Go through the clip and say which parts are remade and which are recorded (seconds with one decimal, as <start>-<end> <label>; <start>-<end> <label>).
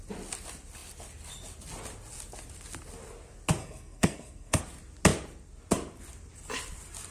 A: 0.0-3.6 recorded; 3.6-4.6 remade; 4.6-7.1 recorded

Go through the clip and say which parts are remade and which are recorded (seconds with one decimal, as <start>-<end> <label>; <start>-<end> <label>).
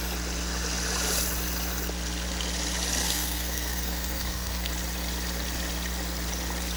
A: 0.0-3.0 recorded; 3.0-4.7 remade; 4.7-6.8 recorded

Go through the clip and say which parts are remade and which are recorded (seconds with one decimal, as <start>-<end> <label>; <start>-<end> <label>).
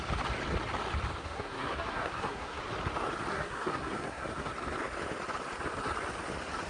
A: 0.0-1.2 recorded; 1.2-2.6 remade; 2.6-3.3 recorded; 3.3-4.5 remade; 4.5-6.7 recorded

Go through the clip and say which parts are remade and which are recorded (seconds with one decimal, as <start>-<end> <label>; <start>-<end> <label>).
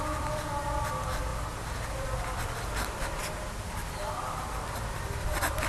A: 0.0-5.7 recorded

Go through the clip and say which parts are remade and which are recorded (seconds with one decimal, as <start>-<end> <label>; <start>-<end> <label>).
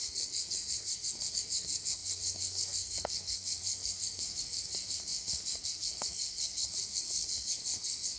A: 0.0-8.2 remade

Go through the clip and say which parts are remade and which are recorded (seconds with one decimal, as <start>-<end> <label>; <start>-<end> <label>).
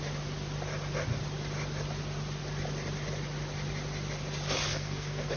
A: 0.0-4.7 recorded; 4.7-5.4 remade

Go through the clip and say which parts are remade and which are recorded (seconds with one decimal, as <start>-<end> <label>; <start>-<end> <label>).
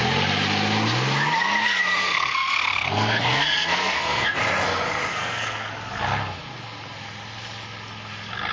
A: 0.0-2.0 recorded; 2.0-4.4 remade; 4.4-5.1 recorded; 5.1-5.7 remade; 5.7-8.5 recorded